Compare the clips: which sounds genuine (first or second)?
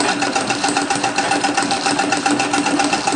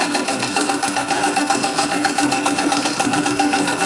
first